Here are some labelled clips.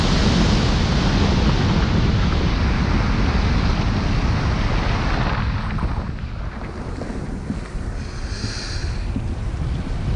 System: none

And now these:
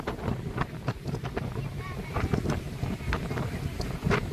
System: vocoder, BigVGAN v2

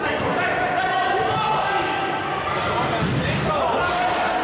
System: none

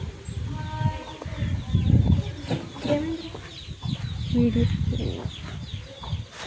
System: none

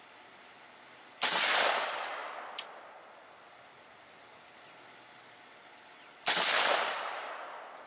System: none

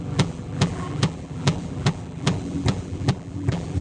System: vocoder, BigVGAN v2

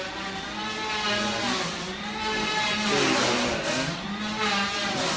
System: none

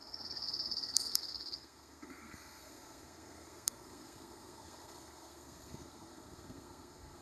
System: codec, SNAC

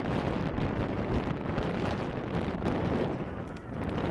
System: vocoder, BigVGAN v2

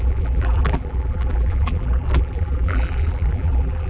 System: vocoder, BigVGAN v2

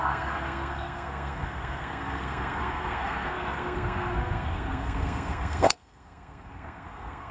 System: codec, SNAC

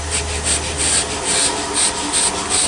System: none